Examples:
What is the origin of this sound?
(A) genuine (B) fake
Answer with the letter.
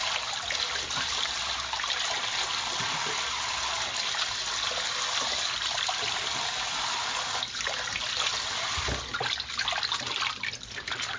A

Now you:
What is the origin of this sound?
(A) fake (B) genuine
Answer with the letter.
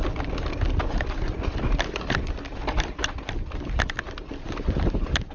B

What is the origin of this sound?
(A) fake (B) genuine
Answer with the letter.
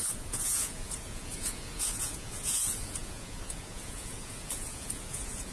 A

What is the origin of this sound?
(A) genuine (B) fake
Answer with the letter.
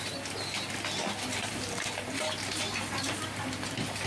A